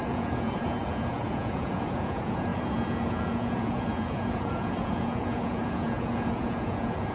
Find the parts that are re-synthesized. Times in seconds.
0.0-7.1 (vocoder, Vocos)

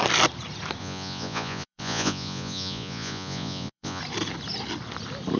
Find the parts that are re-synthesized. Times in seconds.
0.8-4.0 (vocoder, Vocos)

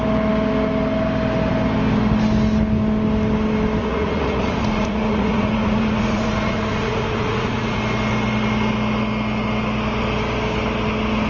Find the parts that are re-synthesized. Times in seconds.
3.8-7.8 (vocoder, Vocos)

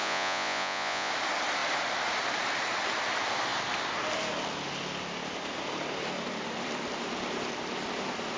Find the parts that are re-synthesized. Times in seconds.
0.0-1.1 (vocoder, Vocos)

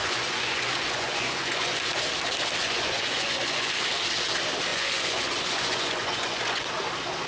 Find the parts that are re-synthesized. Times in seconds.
0.0-1.9 (vocoder, Vocos); 2.6-3.9; 4.7-6.7

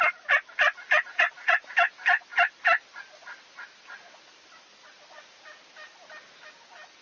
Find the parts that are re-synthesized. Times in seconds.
none

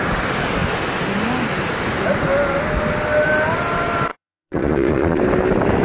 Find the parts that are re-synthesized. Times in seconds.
4.1-5.2 (vocoder, Vocos)

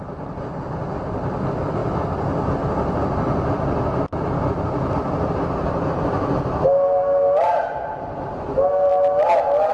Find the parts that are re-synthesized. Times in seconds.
7.4-7.9 (vocoder, Vocos)